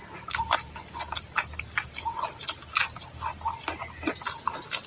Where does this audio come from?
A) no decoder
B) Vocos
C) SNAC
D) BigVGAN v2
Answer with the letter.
A